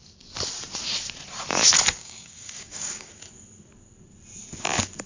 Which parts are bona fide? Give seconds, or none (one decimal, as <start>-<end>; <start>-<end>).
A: 0.0-2.0; 3.1-5.1

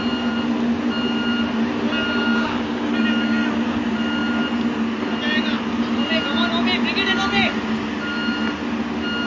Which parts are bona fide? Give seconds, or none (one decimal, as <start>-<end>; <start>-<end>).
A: 0.0-2.2; 2.9-9.3

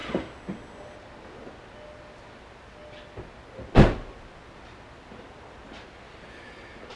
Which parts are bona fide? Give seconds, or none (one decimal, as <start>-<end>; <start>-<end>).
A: 0.0-7.0

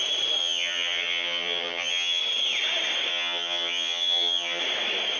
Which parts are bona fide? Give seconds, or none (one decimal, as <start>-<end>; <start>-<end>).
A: 0.0-0.4; 2.2-3.1; 4.6-5.2